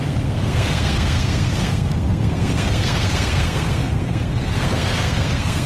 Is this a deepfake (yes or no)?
yes